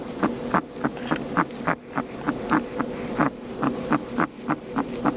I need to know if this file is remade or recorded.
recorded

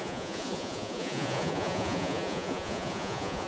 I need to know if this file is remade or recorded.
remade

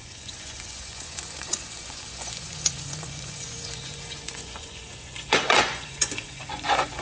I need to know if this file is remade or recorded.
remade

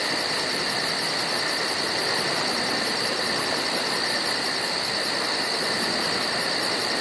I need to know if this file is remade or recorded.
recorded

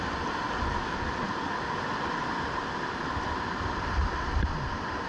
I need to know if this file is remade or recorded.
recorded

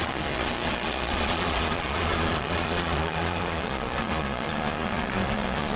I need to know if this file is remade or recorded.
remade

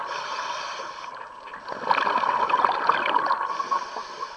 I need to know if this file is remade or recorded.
recorded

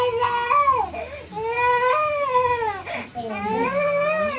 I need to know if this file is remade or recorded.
recorded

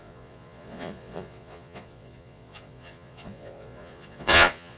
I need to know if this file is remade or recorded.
remade